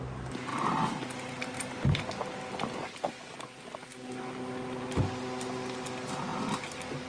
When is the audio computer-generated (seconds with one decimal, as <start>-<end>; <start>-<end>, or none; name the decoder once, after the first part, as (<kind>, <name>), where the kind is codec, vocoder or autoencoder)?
none